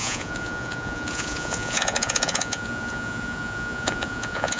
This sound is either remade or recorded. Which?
remade